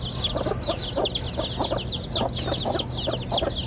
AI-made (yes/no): no